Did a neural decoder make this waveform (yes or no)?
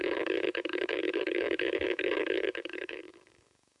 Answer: yes